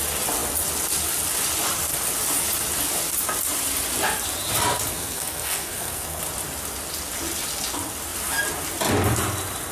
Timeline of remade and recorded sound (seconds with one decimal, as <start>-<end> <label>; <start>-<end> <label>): 0.0-4.9 recorded; 4.9-6.2 remade; 6.2-9.7 recorded